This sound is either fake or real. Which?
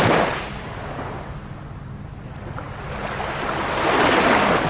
real